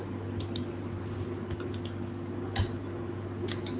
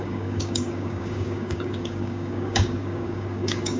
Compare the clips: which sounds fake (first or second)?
second